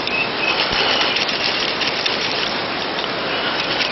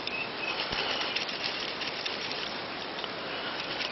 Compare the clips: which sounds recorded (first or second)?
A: first